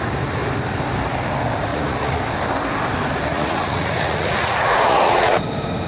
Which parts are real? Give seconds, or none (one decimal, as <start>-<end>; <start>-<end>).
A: 0.0-1.7; 2.2-3.3; 5.4-5.9